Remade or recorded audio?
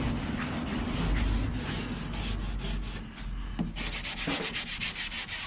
recorded